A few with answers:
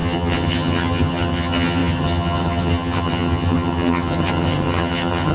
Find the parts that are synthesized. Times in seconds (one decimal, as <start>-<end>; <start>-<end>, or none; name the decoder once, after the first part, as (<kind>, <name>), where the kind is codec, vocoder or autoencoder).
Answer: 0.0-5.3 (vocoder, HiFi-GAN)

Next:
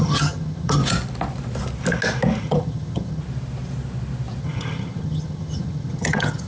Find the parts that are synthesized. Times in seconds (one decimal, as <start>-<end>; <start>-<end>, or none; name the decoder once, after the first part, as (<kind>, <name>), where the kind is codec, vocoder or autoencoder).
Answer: 0.0-0.8 (vocoder, HiFi-GAN); 2.4-3.2; 4.4-6.5

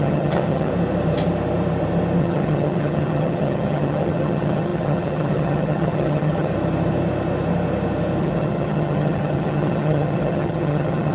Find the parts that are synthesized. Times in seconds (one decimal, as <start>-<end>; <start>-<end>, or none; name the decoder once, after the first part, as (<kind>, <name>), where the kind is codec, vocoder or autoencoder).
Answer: 0.0-0.7 (vocoder, HiFi-GAN); 2.2-6.5; 8.2-11.1

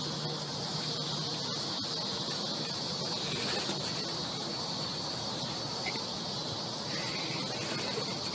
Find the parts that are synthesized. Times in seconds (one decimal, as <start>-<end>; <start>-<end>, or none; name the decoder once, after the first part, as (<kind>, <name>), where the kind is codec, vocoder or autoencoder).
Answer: none

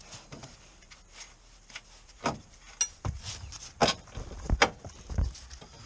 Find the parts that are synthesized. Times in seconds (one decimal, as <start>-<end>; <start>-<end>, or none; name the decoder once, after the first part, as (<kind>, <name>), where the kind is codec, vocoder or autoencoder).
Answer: none

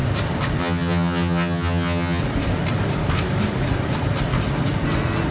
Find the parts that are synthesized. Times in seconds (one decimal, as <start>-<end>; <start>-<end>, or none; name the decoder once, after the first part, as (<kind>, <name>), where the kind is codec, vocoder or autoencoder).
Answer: 0.6-2.2 (vocoder, HiFi-GAN)